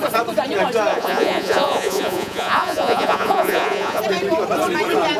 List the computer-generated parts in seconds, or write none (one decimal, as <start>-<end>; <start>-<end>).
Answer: 0.9-4.0